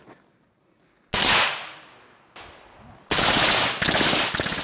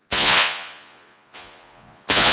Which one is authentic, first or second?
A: first